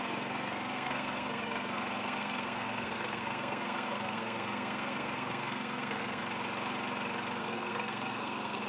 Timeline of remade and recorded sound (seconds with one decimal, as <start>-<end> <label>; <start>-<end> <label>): 0.0-6.2 remade; 6.2-7.4 recorded; 7.4-8.7 remade